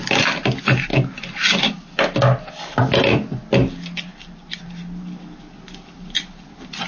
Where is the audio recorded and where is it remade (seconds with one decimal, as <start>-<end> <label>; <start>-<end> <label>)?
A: 0.0-6.9 recorded